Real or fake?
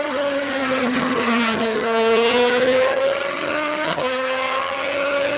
fake